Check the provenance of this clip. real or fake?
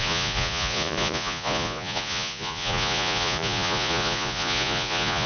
fake